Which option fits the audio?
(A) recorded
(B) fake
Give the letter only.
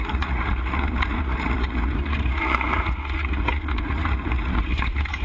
B